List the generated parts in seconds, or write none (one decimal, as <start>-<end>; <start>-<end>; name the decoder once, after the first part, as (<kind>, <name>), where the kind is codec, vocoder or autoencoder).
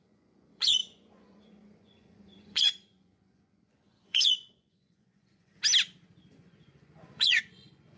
0.0-5.5 (vocoder, Vocos); 6.3-8.0